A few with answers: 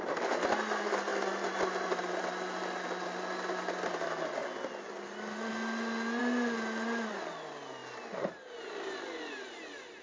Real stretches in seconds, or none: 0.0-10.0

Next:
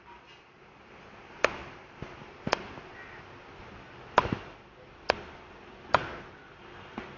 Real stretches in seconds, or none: 0.0-7.2